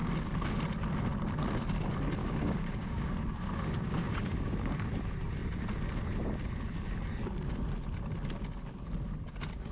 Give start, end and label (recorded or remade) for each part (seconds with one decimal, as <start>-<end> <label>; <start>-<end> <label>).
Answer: 0.0-2.2 recorded; 2.2-4.7 remade; 4.7-9.7 recorded